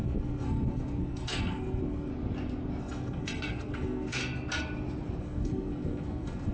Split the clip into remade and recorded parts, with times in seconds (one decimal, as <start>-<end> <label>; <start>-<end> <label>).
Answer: 0.0-2.1 remade; 2.1-2.8 recorded; 2.8-4.2 remade; 4.2-5.2 recorded; 5.2-6.5 remade